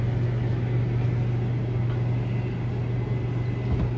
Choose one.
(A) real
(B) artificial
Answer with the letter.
A